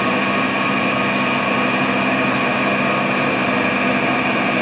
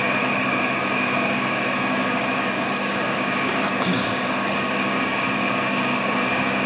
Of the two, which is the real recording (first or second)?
first